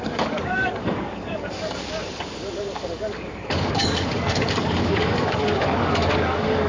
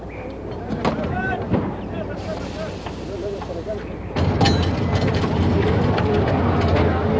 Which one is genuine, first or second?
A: second